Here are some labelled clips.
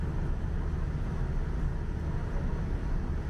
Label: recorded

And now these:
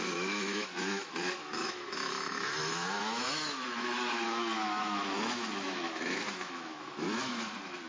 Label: remade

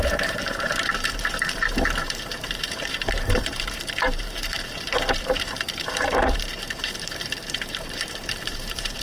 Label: remade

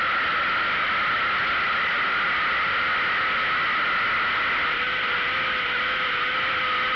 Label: remade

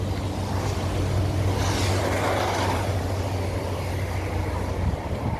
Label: recorded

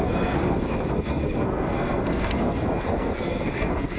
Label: remade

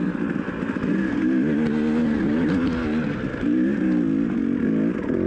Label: recorded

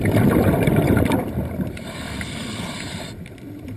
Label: remade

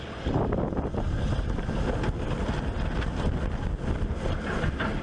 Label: recorded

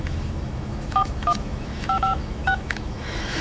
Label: remade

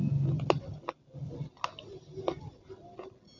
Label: recorded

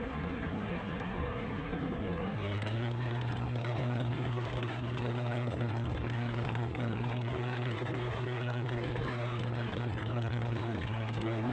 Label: remade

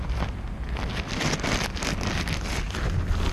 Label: recorded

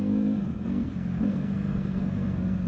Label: remade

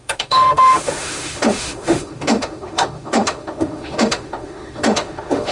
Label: remade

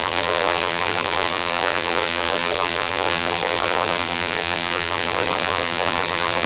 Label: remade